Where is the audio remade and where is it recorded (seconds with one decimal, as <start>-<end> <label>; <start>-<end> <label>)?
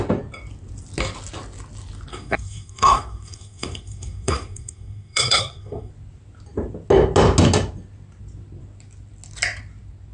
0.0-2.1 recorded; 2.1-5.9 remade; 5.9-10.1 recorded